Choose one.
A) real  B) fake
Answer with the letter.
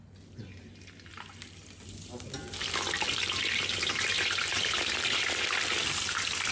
A